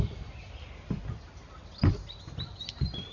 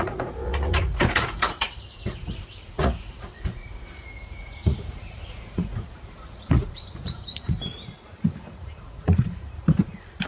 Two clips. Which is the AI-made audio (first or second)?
second